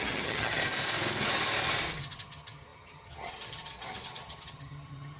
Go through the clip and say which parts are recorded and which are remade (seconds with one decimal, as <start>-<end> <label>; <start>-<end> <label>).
0.0-0.6 remade; 0.6-2.0 recorded; 2.0-5.2 remade